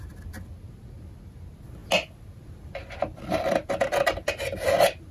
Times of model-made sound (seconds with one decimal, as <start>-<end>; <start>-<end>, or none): none